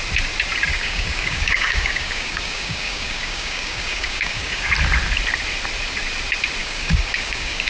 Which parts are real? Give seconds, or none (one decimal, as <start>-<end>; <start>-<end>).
0.0-0.7; 4.7-6.6

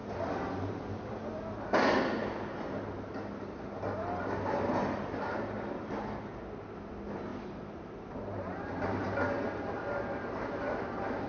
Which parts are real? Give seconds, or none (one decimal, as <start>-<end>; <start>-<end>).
1.4-2.2; 5.4-7.3; 10.8-11.3